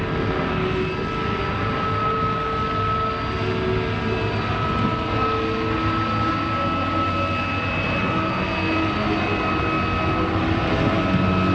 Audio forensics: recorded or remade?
recorded